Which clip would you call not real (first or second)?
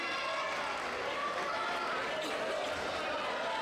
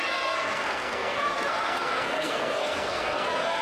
second